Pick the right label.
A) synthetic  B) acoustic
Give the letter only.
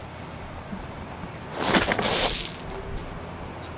B